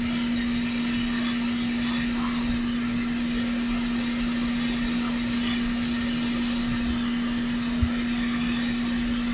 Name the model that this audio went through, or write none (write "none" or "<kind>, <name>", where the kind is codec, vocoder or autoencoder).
none